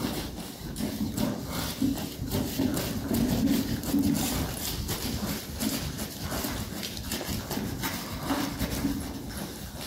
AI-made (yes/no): no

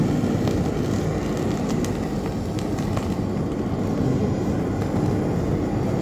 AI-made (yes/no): no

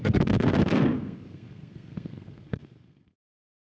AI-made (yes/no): yes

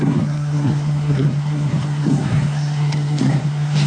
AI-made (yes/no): yes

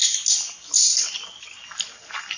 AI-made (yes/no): no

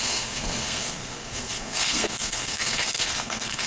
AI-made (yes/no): yes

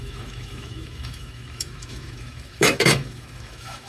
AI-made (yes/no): yes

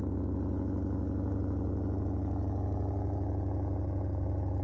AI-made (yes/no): no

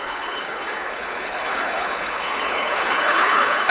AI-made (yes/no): yes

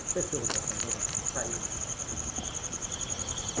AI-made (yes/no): yes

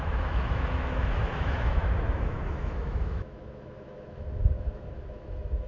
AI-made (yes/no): yes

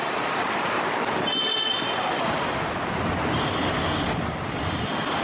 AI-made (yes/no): no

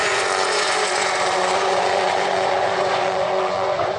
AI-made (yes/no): yes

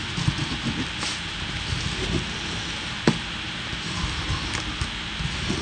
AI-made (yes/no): no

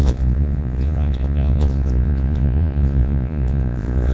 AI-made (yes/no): yes